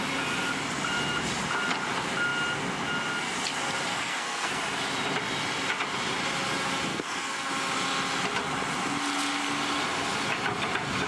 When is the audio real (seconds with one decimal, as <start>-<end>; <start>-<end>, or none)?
0.0-3.9; 4.6-6.9; 7.5-11.1